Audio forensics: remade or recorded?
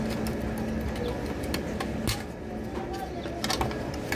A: recorded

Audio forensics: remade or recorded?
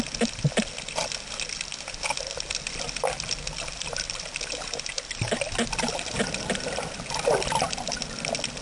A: recorded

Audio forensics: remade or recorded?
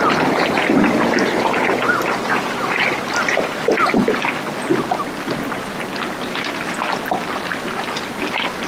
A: recorded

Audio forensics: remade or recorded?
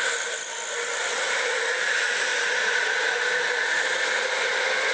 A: recorded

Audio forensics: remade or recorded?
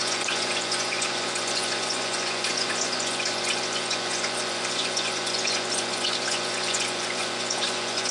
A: remade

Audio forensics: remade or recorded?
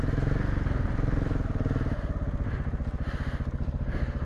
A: recorded